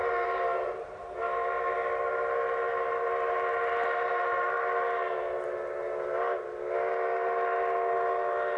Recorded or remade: recorded